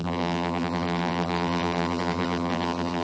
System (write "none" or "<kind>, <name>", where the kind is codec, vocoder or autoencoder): vocoder, BigVGAN v2